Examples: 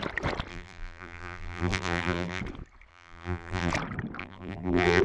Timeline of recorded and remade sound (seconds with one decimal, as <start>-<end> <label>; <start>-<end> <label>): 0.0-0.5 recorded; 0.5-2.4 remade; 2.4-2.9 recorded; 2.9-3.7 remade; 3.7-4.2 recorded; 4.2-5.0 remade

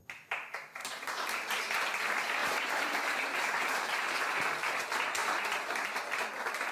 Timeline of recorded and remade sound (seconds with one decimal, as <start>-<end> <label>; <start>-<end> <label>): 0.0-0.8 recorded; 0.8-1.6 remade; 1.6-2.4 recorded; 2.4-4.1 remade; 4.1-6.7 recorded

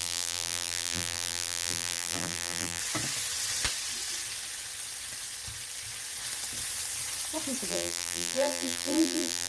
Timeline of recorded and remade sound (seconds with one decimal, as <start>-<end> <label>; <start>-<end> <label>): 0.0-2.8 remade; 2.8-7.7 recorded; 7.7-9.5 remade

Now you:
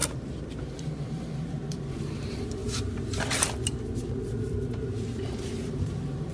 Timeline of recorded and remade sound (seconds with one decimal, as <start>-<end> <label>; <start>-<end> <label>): 0.0-6.3 remade